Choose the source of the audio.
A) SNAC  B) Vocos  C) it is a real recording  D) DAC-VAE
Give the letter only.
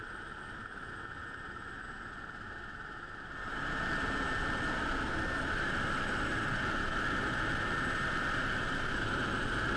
C